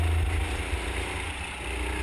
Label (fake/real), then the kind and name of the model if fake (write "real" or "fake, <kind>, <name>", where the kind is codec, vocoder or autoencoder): real